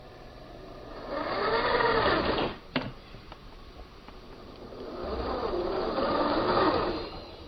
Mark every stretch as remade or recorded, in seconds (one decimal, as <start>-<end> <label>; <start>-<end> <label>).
0.0-7.5 remade